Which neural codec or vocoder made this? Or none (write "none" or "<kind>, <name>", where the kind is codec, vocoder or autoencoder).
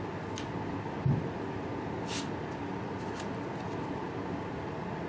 none